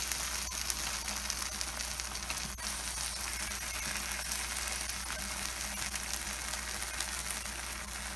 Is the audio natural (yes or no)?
yes